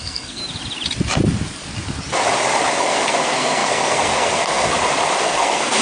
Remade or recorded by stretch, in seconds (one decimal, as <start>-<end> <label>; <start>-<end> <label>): 0.0-0.4 remade; 0.4-2.7 recorded; 2.7-4.7 remade; 4.7-5.2 recorded; 5.2-5.8 remade